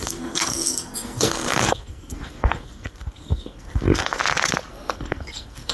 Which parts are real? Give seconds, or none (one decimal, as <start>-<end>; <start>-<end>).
4.2-4.7